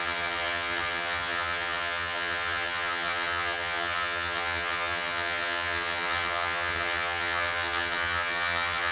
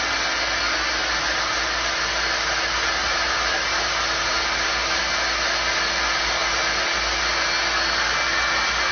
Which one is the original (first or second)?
second